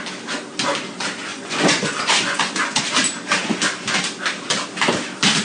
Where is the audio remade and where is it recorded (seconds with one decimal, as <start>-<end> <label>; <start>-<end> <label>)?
0.0-1.3 recorded; 1.3-2.8 remade; 2.8-5.4 recorded